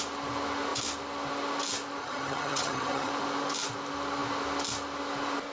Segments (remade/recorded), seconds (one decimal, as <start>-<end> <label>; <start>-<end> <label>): 0.0-2.0 recorded; 2.0-3.1 remade; 3.1-5.5 recorded